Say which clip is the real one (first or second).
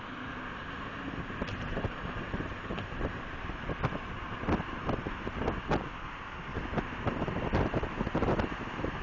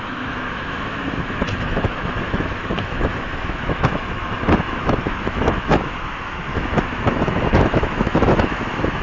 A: first